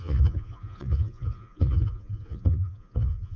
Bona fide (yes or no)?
no